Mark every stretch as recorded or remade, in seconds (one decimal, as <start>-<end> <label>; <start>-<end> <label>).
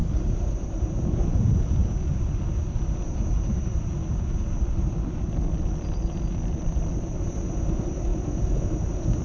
0.0-0.8 remade; 0.8-9.2 recorded